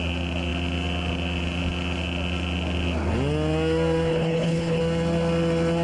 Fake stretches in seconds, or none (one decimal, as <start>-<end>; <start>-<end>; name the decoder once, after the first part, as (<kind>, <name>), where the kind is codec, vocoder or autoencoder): 4.1-4.8 (codec, HILCodec)